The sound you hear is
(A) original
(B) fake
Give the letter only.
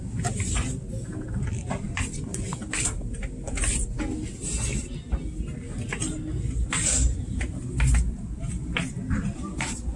A